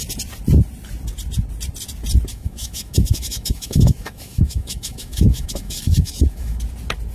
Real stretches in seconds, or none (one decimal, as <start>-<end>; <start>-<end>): 0.0-2.3; 6.6-7.1